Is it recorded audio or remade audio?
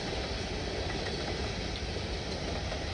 recorded